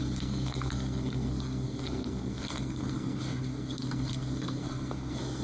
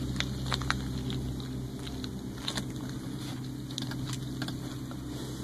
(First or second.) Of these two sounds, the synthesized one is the first